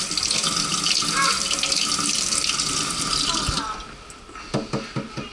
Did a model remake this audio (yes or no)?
no